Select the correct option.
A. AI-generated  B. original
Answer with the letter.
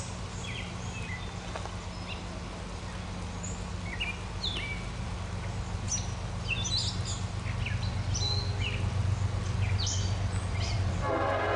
B